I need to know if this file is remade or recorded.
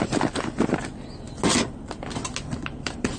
recorded